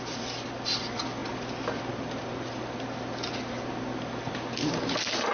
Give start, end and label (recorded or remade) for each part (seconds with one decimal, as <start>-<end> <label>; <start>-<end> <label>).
0.0-5.3 recorded